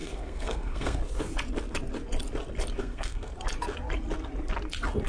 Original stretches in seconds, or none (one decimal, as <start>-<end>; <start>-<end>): 1.0-2.8; 3.3-5.1